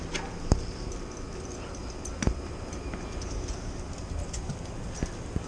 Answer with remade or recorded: recorded